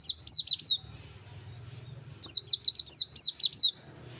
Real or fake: real